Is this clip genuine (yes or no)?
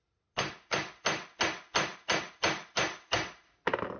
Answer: yes